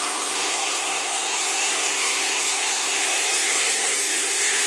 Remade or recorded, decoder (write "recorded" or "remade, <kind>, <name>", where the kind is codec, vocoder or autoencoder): remade, codec, SNAC